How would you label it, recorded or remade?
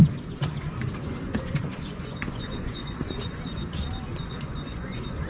remade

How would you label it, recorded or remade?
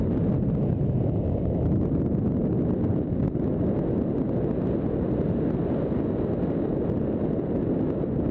recorded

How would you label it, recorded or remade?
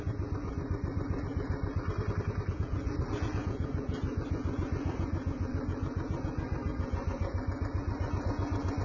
recorded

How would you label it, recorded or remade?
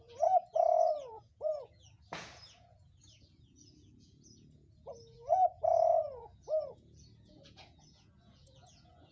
remade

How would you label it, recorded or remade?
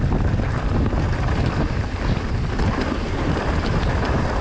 recorded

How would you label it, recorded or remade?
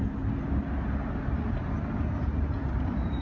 recorded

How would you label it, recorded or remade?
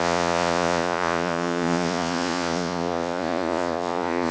remade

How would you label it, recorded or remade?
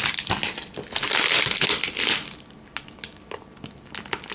recorded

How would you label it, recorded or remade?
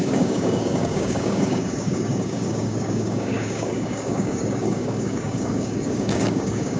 remade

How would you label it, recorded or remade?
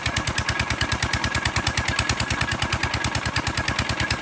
recorded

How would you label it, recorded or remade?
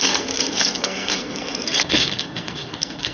remade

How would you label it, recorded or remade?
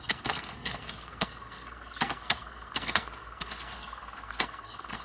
remade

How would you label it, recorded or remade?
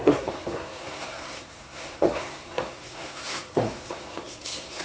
remade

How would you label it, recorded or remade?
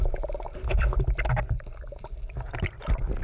recorded